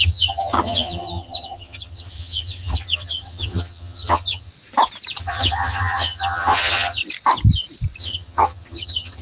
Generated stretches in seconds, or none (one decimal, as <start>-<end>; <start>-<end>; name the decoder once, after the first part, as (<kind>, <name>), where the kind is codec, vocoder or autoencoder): 0.0-4.5 (vocoder, HiFi-GAN); 5.2-7.0; 8.0-9.2